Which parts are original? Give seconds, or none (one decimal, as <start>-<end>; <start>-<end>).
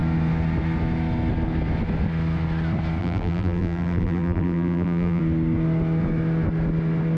0.0-3.0; 5.2-7.2